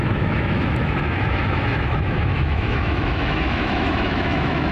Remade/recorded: remade